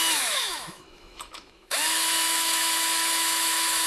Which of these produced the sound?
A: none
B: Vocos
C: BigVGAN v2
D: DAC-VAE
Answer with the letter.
D